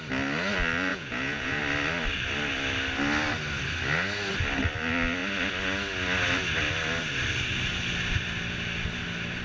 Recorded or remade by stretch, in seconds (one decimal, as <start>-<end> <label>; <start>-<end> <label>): 0.0-0.9 recorded; 0.9-1.6 remade; 1.6-9.4 recorded